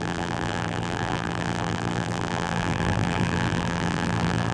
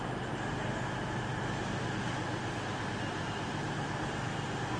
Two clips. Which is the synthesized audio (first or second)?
first